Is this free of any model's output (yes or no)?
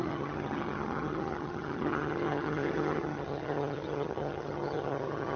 no